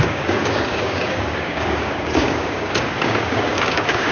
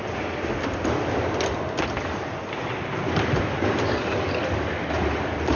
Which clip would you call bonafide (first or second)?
second